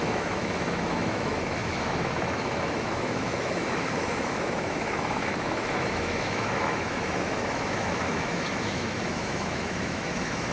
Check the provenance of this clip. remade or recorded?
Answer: remade